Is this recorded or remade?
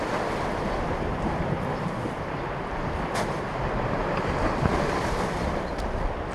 recorded